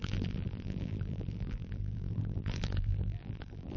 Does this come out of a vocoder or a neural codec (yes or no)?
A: yes